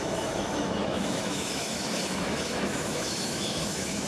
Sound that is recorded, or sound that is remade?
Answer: remade